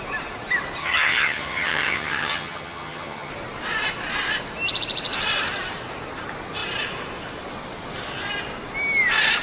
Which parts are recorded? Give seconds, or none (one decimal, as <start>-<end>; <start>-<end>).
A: 0.0-0.8; 3.3-9.4